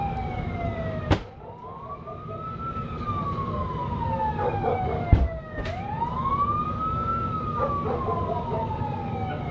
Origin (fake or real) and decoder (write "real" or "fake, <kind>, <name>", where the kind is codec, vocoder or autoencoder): fake, codec, DAC